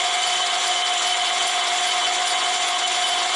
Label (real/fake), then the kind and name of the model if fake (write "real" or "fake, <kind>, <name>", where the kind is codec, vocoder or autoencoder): fake, vocoder, Vocos